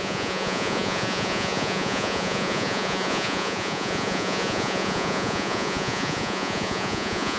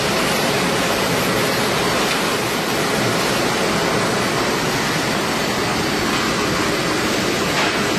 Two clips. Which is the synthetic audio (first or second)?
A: first